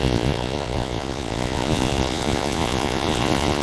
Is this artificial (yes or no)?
yes